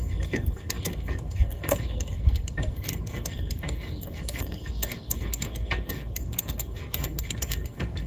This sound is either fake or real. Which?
fake